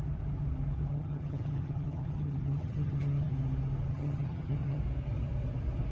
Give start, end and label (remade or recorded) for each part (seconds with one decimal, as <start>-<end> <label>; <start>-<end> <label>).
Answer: 0.0-0.9 recorded; 0.9-3.3 remade; 3.3-3.9 recorded; 3.9-4.8 remade; 4.8-5.9 recorded